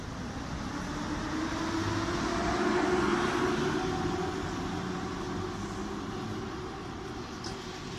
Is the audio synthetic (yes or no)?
no